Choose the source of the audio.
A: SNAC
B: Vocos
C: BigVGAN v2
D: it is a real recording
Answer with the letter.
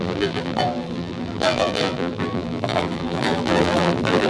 C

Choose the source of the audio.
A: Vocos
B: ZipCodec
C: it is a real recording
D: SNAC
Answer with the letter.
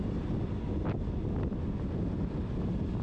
C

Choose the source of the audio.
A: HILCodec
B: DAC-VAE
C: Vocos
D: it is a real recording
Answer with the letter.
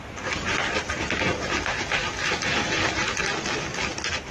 D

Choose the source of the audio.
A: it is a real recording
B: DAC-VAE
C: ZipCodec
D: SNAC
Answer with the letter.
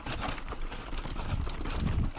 A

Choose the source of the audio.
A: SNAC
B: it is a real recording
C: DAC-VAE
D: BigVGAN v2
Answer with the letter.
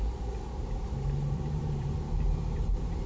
D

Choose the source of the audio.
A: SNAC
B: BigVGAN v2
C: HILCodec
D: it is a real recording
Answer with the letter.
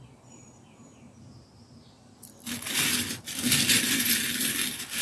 D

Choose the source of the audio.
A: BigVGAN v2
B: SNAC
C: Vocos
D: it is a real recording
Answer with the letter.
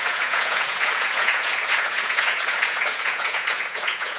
C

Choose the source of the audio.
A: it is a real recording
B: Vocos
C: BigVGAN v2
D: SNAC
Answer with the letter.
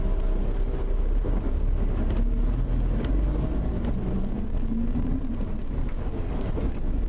A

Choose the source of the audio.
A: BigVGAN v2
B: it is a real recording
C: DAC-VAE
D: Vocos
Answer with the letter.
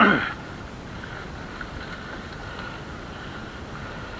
B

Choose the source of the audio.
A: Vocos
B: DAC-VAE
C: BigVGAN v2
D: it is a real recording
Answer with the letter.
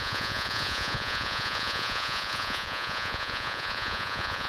A